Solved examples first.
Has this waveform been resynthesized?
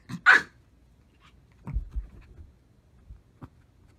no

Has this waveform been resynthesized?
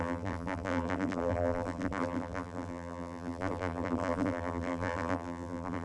yes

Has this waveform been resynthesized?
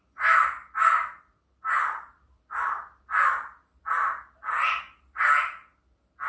no